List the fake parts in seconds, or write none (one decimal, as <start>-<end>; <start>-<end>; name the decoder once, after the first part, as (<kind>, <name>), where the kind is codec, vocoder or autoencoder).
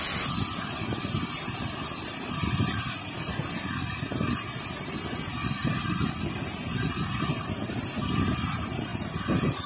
none